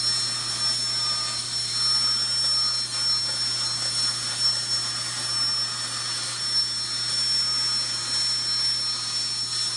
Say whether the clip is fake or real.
real